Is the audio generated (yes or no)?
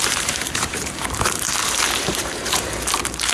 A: yes